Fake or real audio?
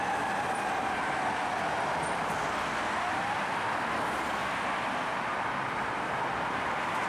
real